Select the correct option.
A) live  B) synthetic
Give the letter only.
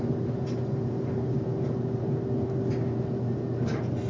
A